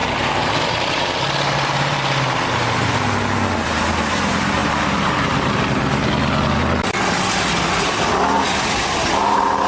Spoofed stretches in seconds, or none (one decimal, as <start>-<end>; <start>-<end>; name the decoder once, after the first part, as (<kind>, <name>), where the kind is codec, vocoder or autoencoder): 0.0-3.0 (vocoder, BigVGAN v2); 4.6-6.1